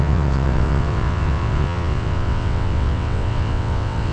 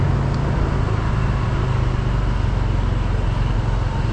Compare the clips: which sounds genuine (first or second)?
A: second